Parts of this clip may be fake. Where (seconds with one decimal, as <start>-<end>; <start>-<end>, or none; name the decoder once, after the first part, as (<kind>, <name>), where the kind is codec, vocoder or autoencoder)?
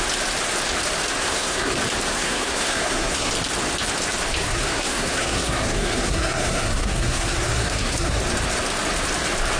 1.2-1.7 (codec, SNAC); 2.1-3.3; 4.4-8.2